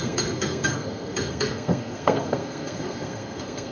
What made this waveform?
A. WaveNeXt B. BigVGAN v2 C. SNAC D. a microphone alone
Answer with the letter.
C